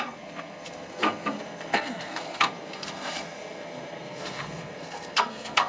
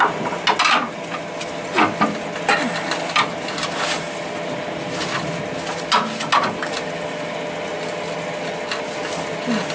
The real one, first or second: second